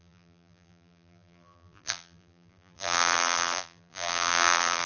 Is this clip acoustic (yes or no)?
no